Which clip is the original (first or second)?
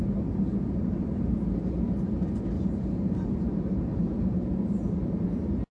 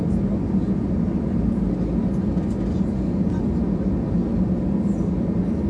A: second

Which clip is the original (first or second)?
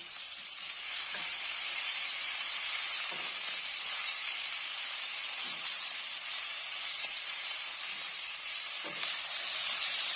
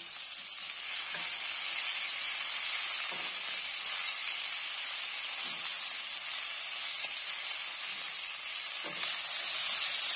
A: second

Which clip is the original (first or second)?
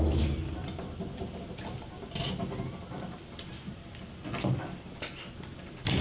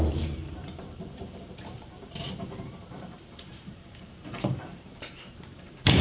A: first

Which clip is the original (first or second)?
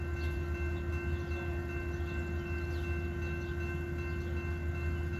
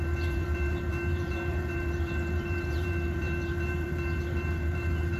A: first